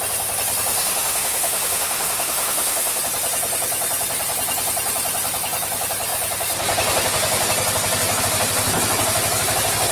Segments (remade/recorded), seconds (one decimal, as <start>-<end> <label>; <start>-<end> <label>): 0.0-0.7 recorded; 0.7-3.0 remade; 3.0-9.9 recorded